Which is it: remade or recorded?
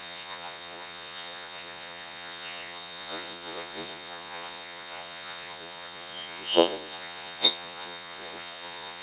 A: remade